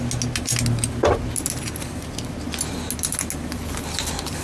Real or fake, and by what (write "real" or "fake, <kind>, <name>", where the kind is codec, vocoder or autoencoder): real